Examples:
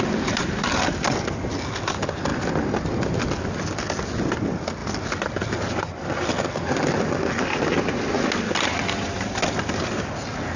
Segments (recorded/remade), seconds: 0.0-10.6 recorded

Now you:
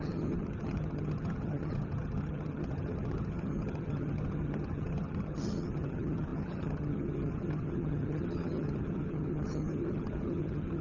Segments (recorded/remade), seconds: 0.0-10.8 remade

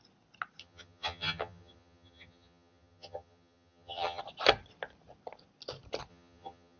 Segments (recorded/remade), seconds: 0.0-0.6 recorded; 0.6-4.2 remade; 4.2-6.1 recorded; 6.1-6.8 remade

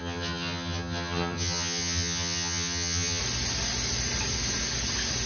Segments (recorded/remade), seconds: 0.0-3.2 remade; 3.2-5.3 recorded

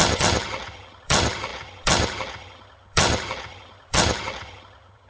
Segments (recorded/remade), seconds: 0.0-5.1 remade

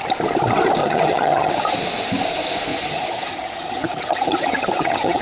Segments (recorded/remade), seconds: 0.0-0.8 recorded; 0.8-1.5 remade; 1.5-2.7 recorded; 2.7-5.2 remade

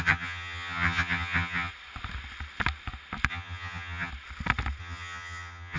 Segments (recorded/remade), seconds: 0.0-1.7 remade; 1.7-3.3 recorded; 3.3-4.1 remade; 4.1-4.8 recorded; 4.8-5.8 remade